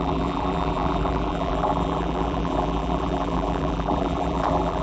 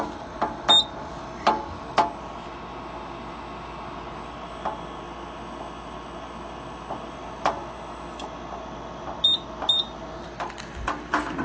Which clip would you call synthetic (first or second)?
first